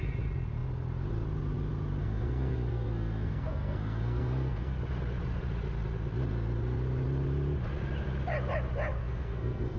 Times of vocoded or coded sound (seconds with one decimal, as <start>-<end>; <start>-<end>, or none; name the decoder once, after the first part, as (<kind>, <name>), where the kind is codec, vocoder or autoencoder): 2.0-4.8 (codec, SNAC); 9.0-9.8